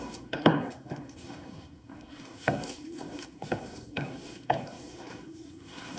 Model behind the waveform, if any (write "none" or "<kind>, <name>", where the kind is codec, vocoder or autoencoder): codec, SNAC